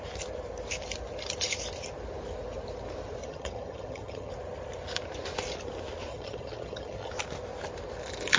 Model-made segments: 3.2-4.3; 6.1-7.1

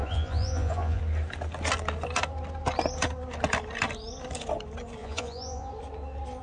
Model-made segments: 0.0-1.0; 5.0-5.7

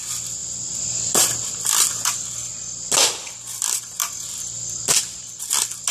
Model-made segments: none

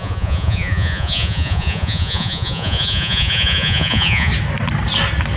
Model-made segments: 0.0-4.3